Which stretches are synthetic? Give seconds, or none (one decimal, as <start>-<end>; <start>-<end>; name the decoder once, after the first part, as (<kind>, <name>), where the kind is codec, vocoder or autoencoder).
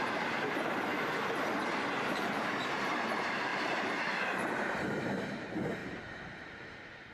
0.0-0.9 (vocoder, BigVGAN v2); 1.7-7.1